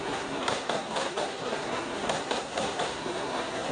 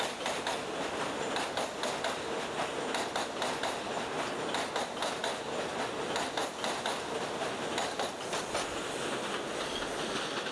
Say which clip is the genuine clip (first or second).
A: second